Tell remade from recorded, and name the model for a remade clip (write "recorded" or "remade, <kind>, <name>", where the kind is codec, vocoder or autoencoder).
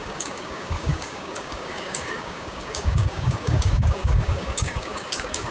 remade, codec, DAC